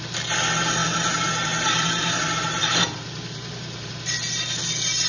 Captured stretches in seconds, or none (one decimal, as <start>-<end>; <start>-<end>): 0.0-0.8; 3.9-5.1